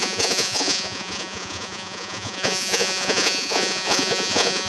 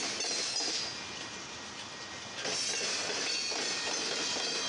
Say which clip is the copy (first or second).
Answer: first